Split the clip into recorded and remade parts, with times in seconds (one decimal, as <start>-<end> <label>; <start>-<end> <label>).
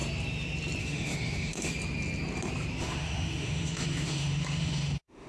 0.0-0.8 recorded; 0.8-1.7 remade; 1.7-2.8 recorded; 2.8-5.3 remade